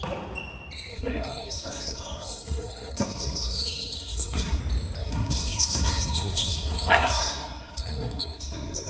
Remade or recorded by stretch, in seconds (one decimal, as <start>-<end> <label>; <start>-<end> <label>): 0.0-0.9 recorded; 0.9-4.6 remade; 4.6-5.0 recorded; 5.0-8.9 remade